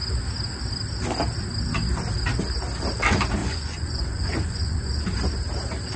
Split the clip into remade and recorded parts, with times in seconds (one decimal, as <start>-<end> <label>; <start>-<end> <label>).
0.0-3.4 recorded; 3.4-5.0 remade; 5.0-6.0 recorded